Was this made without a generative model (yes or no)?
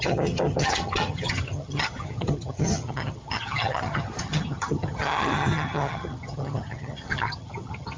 no